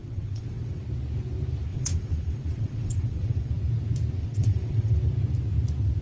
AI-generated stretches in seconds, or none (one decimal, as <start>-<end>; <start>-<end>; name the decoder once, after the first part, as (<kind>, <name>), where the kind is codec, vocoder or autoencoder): 0.0-0.8 (vocoder, WaveNeXt); 1.7-3.5; 4.2-4.9